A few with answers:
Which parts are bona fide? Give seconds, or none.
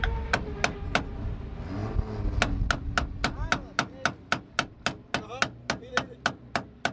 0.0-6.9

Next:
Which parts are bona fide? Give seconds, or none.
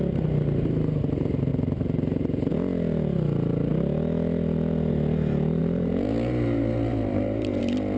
0.0-1.5; 2.5-5.6; 7.6-8.0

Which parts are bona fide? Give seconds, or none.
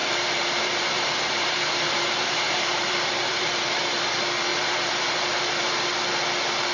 4.0-4.5; 5.7-6.7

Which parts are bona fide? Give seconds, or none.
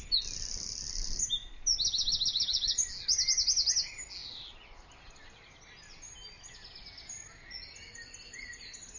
0.0-2.3; 2.9-4.2; 5.8-9.0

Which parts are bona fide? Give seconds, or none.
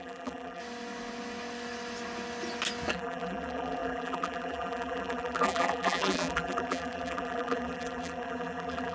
0.6-2.9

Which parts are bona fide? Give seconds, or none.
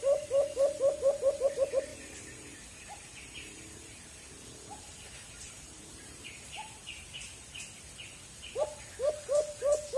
0.0-1.9; 4.3-4.7; 7.6-10.0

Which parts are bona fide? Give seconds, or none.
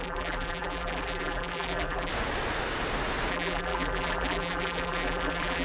2.1-3.3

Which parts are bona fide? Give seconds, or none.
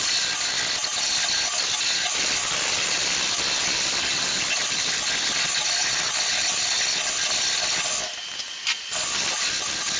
0.0-10.0